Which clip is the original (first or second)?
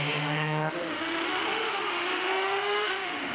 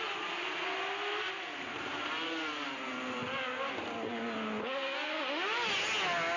second